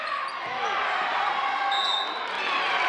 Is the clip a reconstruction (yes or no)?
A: no